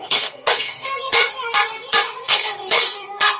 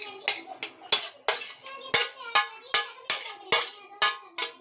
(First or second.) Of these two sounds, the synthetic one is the first